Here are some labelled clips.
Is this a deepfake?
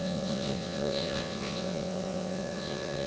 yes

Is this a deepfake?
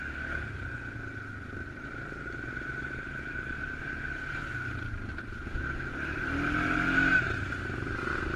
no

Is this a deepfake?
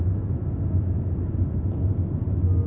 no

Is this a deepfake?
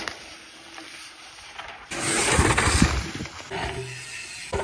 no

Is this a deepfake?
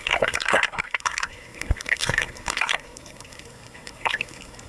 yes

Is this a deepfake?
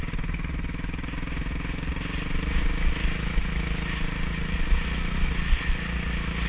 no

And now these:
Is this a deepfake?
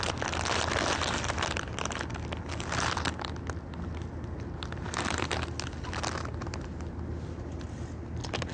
no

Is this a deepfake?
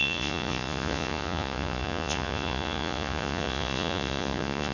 yes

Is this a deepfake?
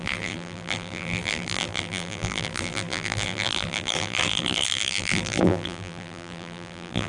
yes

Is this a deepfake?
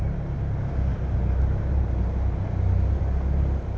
no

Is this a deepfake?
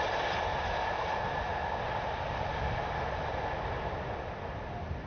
no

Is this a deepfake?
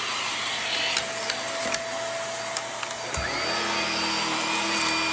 no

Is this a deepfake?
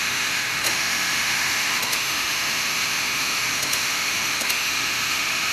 yes